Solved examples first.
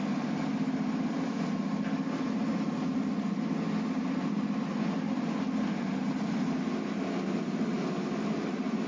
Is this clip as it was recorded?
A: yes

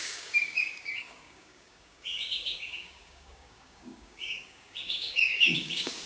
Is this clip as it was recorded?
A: no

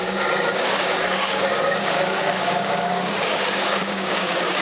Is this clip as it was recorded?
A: no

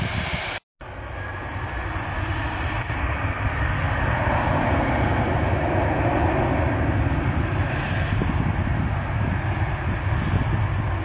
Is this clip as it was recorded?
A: yes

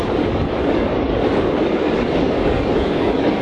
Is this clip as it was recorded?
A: no